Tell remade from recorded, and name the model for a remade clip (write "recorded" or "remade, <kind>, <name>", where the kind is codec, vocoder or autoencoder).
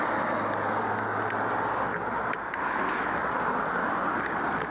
recorded